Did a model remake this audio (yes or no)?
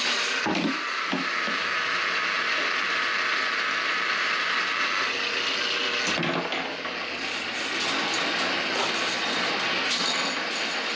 no